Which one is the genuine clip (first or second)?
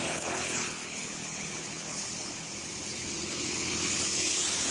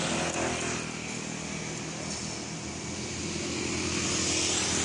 second